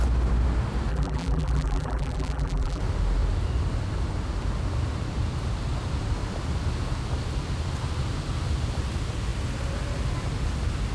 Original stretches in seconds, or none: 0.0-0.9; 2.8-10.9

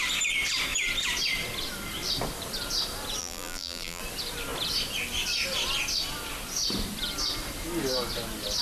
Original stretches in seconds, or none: 0.0-3.2; 4.0-8.6

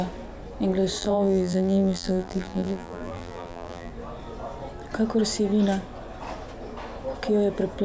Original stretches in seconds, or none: 0.0-1.0; 3.9-7.8

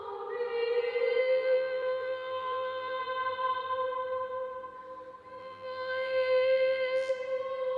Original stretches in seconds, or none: 0.0-1.2; 3.0-5.4; 7.1-7.8

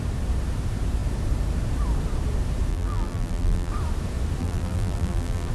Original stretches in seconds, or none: 0.0-2.7; 3.7-4.4

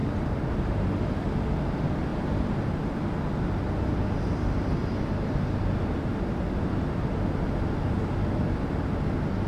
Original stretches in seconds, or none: 0.9-9.5